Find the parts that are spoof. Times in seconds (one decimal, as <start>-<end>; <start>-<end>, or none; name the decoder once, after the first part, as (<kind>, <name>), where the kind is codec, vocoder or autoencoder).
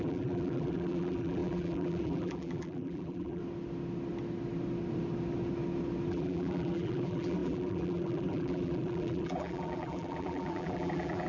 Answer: 0.0-3.4 (vocoder, BigVGAN v2); 6.1-11.3